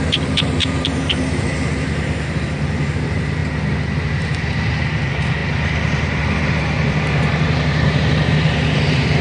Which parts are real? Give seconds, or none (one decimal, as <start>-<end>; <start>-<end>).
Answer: 3.4-4.1